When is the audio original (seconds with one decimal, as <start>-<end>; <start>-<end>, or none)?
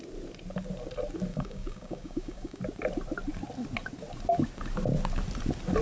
0.0-1.3; 2.6-5.8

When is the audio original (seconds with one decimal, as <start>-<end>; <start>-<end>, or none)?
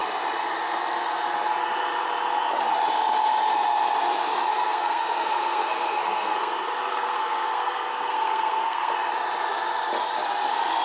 0.0-4.5; 8.9-10.8